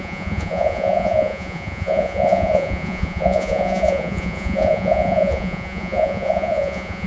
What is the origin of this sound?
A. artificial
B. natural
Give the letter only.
A